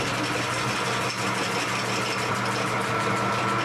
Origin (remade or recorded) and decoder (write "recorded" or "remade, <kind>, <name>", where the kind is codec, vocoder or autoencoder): recorded